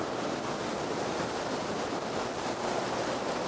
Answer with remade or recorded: recorded